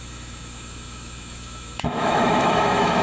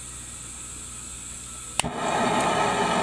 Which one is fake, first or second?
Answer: first